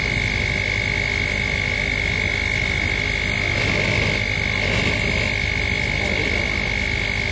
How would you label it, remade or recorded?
recorded